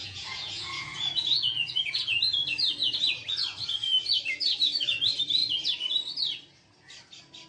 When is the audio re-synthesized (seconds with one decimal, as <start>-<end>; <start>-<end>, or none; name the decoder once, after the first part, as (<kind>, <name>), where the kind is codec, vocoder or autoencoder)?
0.0-2.2 (vocoder, Vocos)